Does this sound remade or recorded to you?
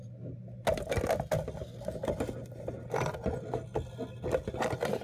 recorded